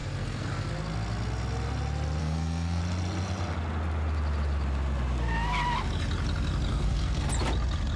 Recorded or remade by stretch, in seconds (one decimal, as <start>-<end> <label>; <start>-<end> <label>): 0.0-0.7 remade; 0.7-2.2 recorded; 2.2-2.8 remade; 2.8-6.7 recorded; 6.7-7.3 remade; 7.3-8.0 recorded